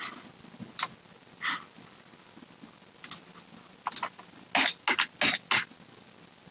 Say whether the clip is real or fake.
real